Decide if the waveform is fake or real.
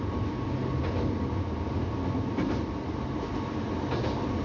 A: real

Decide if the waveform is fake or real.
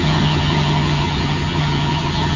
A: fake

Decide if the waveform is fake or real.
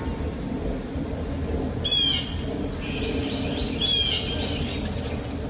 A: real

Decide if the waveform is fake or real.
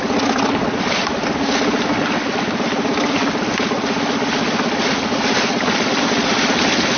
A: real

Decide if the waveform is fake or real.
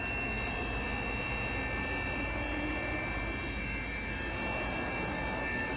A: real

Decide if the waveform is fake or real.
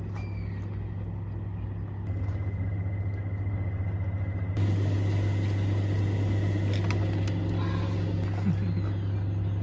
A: real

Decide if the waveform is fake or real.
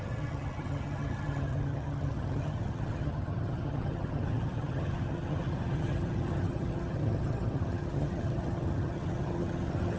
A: fake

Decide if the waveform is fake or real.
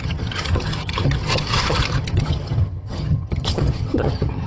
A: fake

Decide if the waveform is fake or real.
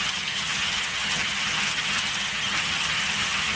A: fake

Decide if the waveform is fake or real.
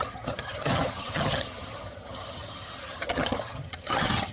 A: fake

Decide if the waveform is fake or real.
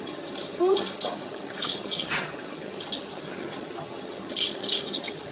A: fake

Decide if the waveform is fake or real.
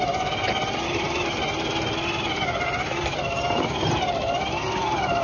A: real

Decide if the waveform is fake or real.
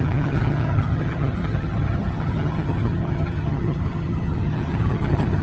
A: fake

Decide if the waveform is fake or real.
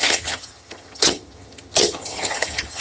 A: fake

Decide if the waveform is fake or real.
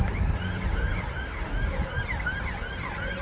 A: real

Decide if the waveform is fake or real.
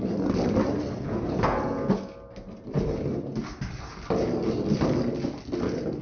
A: real